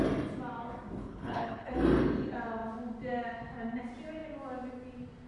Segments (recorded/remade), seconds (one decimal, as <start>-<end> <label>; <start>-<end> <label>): 0.0-1.0 recorded; 1.0-1.7 remade; 1.7-5.3 recorded